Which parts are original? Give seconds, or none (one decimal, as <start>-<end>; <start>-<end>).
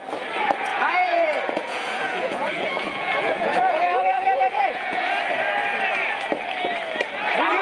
0.0-0.7; 5.1-7.6